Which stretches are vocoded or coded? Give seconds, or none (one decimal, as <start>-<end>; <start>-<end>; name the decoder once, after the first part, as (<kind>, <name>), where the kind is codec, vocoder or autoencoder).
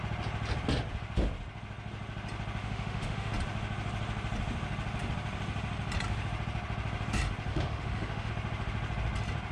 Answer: 2.6-3.3 (autoencoder, DAC-VAE); 7.5-8.3